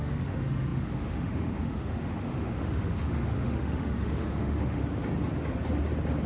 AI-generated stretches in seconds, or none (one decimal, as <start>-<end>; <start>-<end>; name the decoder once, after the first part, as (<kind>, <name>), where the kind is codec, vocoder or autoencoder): 0.0-4.8 (autoencoder, DAC-VAE)